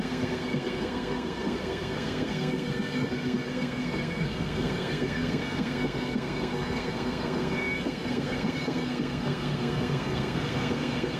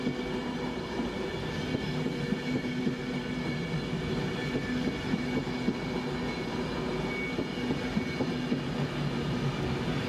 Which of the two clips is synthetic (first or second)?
first